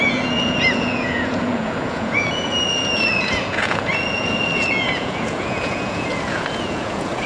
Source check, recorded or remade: remade